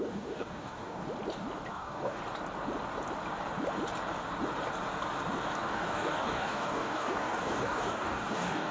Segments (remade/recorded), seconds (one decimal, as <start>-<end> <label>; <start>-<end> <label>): 0.0-1.0 remade; 1.0-1.7 recorded; 1.7-2.2 remade; 2.2-5.7 recorded; 5.7-8.7 remade